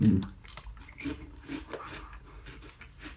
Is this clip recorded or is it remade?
remade